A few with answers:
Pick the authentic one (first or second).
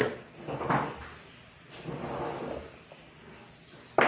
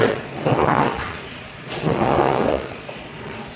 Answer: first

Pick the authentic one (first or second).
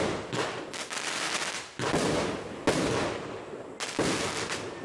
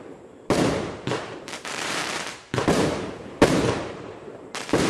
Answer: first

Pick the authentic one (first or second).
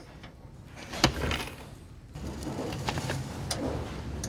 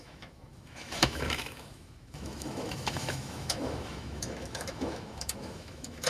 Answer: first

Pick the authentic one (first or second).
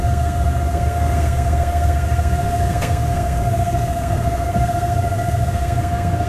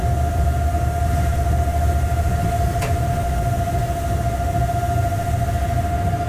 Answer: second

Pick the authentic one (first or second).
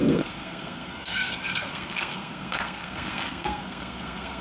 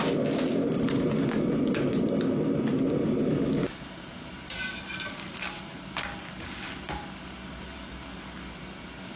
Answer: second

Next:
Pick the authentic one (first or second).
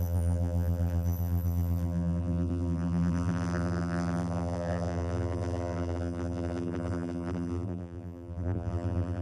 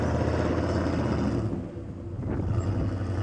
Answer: second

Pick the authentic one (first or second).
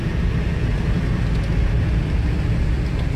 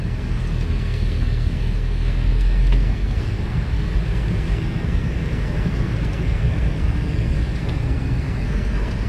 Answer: first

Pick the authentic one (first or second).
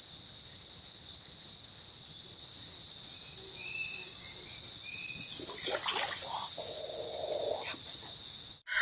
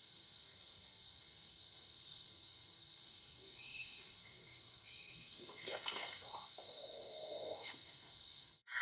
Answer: first